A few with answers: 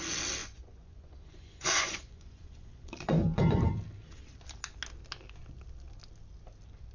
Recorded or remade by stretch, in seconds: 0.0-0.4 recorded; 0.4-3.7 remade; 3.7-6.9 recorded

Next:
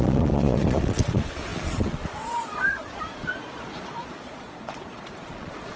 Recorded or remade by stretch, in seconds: 0.0-5.8 remade